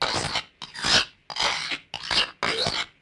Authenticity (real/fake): real